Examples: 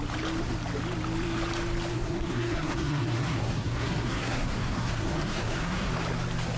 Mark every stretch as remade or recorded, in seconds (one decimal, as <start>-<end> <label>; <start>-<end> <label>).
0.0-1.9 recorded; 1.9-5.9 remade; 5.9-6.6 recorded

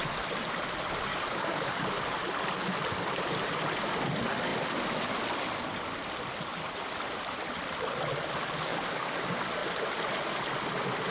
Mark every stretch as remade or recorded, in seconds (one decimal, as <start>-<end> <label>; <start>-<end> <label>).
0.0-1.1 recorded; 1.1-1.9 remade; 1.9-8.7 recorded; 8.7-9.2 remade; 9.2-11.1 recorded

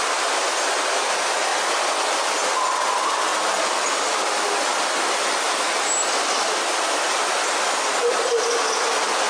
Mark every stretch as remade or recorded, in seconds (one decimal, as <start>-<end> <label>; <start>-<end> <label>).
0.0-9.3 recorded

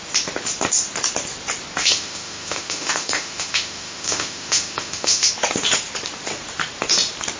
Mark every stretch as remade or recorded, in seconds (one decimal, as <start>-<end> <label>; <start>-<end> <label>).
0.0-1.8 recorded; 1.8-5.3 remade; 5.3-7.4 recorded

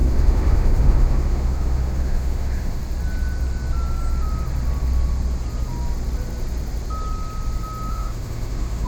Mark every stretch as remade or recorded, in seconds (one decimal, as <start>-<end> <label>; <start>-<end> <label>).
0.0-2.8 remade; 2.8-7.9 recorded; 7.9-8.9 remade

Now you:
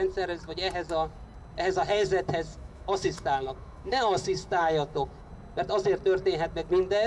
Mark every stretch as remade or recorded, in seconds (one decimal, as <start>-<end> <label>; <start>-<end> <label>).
0.0-2.5 recorded; 2.5-5.3 remade; 5.3-7.1 recorded

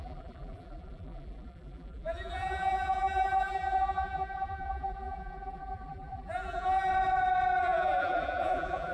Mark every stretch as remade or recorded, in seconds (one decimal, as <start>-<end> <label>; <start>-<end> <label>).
0.0-6.9 remade; 6.9-7.6 recorded; 7.6-8.9 remade